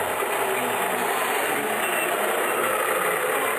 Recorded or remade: recorded